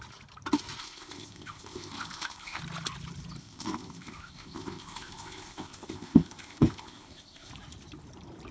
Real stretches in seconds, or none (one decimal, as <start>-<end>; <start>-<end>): 0.0-0.8; 2.6-3.4; 7.5-8.5